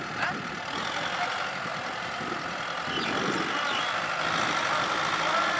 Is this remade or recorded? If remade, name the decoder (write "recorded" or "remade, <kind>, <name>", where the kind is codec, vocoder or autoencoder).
recorded